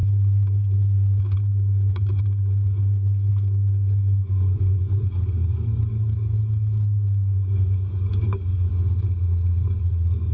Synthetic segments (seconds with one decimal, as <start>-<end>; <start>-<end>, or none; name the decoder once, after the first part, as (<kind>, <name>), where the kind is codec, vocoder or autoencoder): 0.0-8.7 (codec, DAC); 9.8-10.3